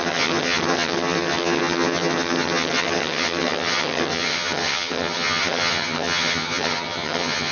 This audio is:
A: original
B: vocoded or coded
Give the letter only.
B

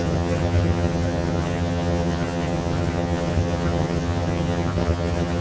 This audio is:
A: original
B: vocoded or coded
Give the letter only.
B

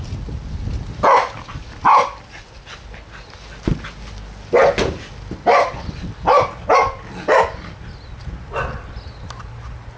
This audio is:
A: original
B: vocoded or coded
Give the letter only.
A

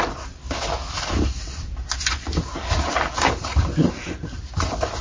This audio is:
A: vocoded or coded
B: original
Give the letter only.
B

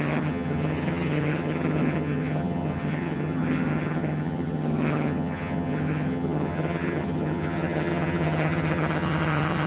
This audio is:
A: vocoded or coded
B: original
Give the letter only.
A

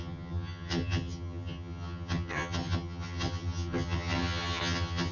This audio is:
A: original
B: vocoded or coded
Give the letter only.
B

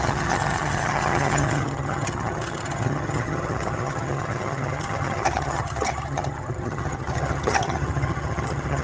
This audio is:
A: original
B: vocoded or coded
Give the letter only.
B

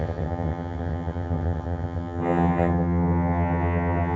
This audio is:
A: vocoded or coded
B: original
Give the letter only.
A